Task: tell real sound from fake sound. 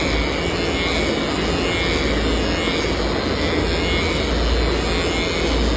real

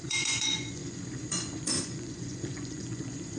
fake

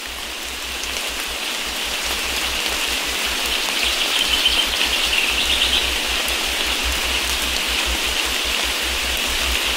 real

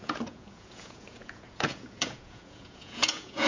fake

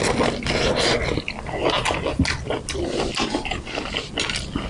real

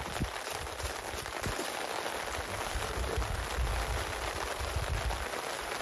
real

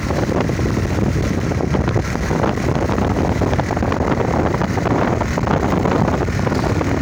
real